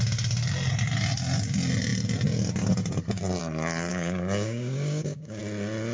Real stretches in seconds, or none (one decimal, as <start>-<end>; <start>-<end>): 0.0-3.9; 5.4-5.9